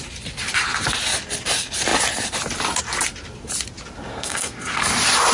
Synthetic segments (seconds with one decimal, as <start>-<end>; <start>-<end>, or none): 4.1-4.8